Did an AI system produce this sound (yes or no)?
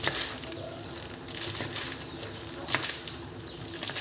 no